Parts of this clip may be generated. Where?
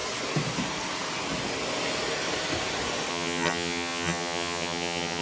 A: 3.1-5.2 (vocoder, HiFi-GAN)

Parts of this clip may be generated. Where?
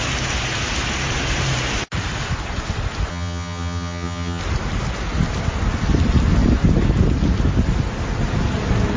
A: 3.1-4.4 (vocoder, HiFi-GAN)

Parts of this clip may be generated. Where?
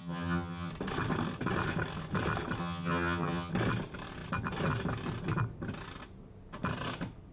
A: 0.0-0.7 (vocoder, HiFi-GAN); 2.6-3.5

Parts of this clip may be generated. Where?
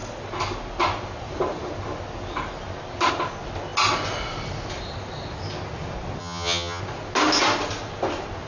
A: 6.2-6.8 (vocoder, HiFi-GAN)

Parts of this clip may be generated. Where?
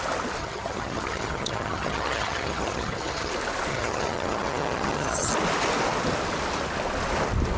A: 0.4-3.3 (vocoder, HiFi-GAN); 3.7-5.3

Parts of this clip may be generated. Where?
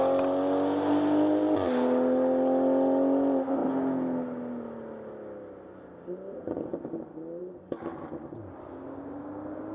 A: none